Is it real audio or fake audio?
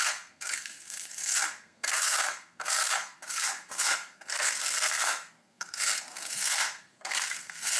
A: fake